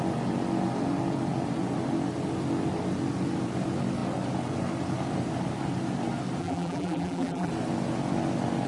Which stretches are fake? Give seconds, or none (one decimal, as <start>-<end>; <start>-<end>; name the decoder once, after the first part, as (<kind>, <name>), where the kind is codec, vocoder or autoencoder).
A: 6.4-7.5 (vocoder, BigVGAN v2)